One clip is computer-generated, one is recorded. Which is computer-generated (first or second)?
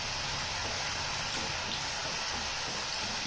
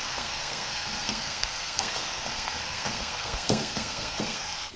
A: second